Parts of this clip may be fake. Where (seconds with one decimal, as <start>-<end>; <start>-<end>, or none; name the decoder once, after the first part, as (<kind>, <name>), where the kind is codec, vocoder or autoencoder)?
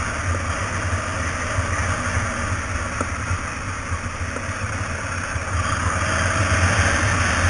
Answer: none